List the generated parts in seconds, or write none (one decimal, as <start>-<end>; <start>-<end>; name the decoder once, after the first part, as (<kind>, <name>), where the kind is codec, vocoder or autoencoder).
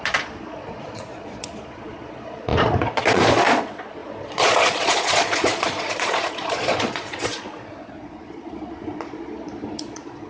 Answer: 0.0-10.3 (vocoder, Vocos)